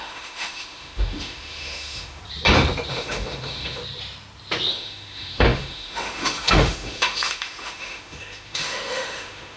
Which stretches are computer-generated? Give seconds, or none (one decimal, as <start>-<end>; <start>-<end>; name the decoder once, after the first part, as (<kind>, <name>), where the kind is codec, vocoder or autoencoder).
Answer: 0.0-2.2 (autoencoder, DAC-VAE); 2.9-3.8; 4.7-9.6